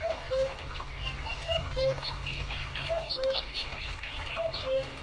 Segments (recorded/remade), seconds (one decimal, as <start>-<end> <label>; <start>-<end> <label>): 0.0-5.0 remade